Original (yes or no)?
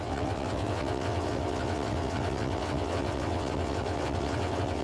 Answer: no